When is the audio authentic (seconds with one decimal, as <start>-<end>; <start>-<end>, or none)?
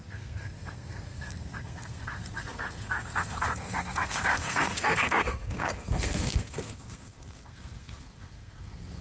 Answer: none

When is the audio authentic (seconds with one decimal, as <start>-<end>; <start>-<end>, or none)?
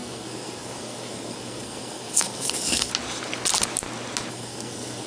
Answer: 2.9-4.3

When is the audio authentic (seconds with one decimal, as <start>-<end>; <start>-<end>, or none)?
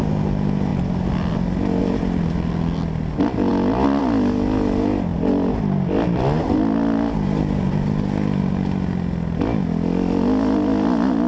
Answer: 0.0-11.3